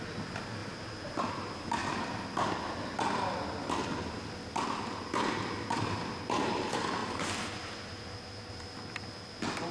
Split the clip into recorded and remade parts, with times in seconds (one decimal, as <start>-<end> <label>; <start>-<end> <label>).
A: 0.0-9.7 recorded